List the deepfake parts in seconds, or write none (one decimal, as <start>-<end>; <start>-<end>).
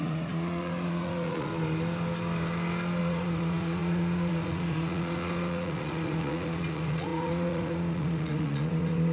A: 0.0-1.5; 3.0-9.1